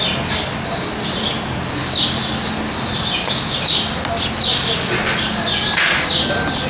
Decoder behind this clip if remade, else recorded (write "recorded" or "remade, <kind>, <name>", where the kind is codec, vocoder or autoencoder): recorded